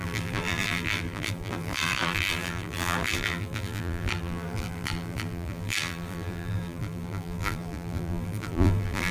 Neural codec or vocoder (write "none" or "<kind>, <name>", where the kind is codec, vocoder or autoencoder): vocoder, BigVGAN v2